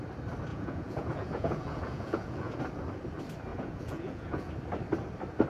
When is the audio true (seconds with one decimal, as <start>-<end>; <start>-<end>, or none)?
0.0-0.5; 2.6-3.5; 4.5-5.5